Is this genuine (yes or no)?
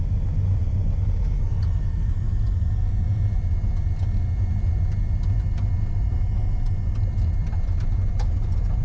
yes